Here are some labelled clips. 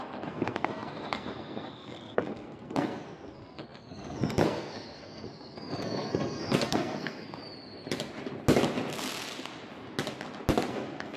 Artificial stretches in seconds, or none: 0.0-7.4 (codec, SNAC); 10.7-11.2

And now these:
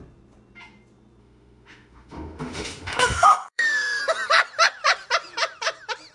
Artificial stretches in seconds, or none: 1.2-4.0 (autoencoder, DAC-VAE)

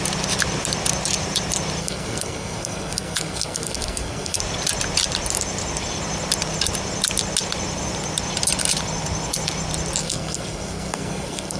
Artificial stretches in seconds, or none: 1.8-4.4 (codec, SNAC); 10.0-11.6

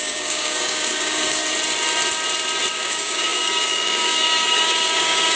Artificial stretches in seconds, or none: 0.0-1.4 (codec, DAC); 2.7-5.4

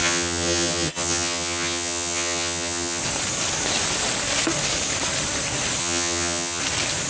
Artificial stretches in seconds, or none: 0.0-3.0 (vocoder, HiFi-GAN); 5.8-6.6

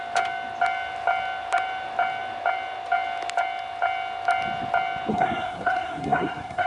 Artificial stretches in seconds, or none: 5.1-6.7 (codec, SNAC)

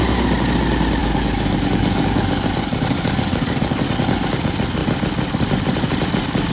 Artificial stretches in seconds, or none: 1.0-3.9 (codec, DAC)

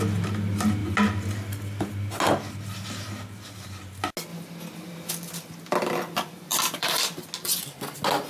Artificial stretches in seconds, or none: 6.5-7.1 (vocoder, BigVGAN v2)